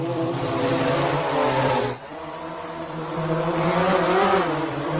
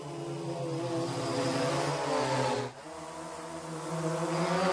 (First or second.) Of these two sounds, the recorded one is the second